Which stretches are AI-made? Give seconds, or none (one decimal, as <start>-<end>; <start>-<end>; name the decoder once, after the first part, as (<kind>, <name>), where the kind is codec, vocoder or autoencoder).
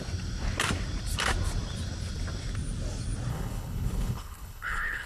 3.3-5.1 (codec, HILCodec)